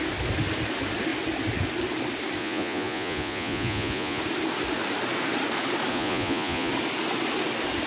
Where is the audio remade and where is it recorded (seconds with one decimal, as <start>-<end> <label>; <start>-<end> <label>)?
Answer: 0.0-2.4 recorded; 2.4-4.2 remade; 4.2-5.9 recorded; 5.9-6.7 remade; 6.7-7.9 recorded